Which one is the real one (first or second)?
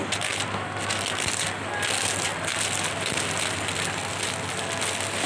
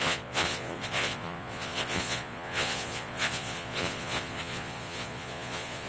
first